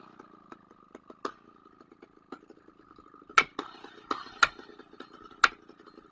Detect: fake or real real